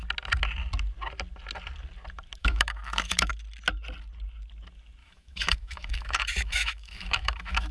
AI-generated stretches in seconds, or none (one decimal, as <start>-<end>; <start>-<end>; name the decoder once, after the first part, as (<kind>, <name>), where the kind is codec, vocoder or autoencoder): 2.4-3.3 (autoencoder, DAC-VAE); 5.0-7.7